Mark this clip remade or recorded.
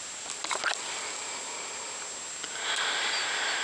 recorded